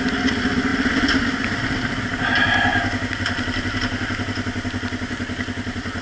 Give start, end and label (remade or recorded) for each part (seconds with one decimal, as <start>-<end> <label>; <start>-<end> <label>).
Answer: 0.0-6.0 recorded